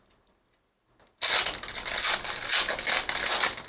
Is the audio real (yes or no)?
yes